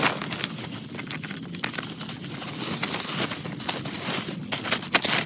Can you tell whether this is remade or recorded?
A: recorded